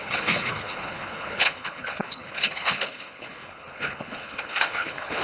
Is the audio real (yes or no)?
no